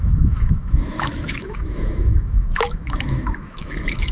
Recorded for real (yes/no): no